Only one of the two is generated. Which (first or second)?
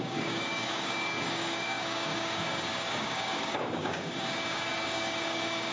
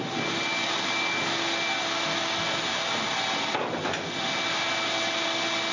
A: first